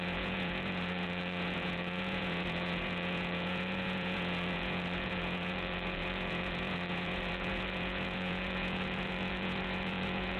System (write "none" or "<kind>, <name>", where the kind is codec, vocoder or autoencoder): vocoder, Vocos